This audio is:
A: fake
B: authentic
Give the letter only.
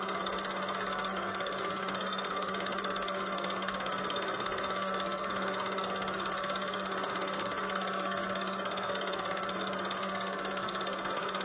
A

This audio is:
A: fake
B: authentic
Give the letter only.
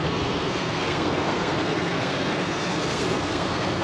A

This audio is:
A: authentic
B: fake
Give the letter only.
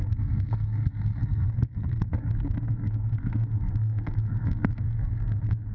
B